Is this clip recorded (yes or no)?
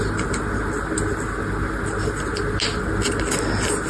yes